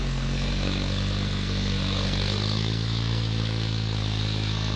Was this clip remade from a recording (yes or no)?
yes